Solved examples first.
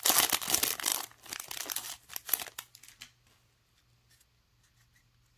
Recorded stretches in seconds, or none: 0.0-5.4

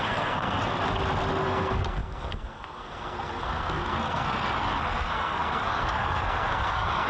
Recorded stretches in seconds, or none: 0.7-1.4

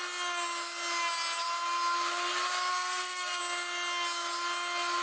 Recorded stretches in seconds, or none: 0.0-2.7; 3.4-5.0